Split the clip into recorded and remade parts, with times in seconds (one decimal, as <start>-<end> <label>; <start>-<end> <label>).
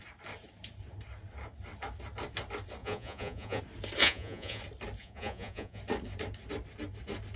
0.0-2.8 recorded; 2.8-3.6 remade; 3.6-4.0 recorded; 4.0-4.6 remade; 4.6-5.0 recorded; 5.0-5.8 remade; 5.8-7.4 recorded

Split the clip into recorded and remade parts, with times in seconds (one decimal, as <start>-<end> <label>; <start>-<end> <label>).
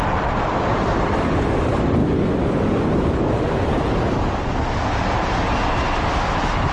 0.0-6.7 remade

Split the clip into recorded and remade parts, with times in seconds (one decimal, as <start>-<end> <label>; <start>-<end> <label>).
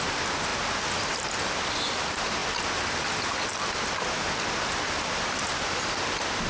0.0-6.5 recorded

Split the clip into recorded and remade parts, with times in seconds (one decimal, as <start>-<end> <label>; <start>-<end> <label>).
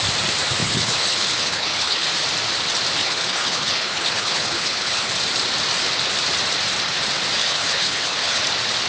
0.0-0.6 recorded; 0.6-2.1 remade; 2.1-3.0 recorded; 3.0-5.1 remade; 5.1-7.4 recorded; 7.4-8.4 remade; 8.4-8.9 recorded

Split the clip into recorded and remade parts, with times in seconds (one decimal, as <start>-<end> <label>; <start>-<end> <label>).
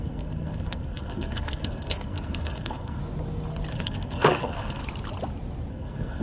0.0-3.0 remade; 3.0-3.7 recorded; 3.7-4.8 remade; 4.8-5.7 recorded; 5.7-6.2 remade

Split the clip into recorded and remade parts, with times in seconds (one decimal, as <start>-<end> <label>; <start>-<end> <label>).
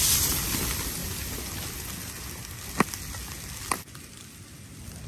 0.0-5.1 recorded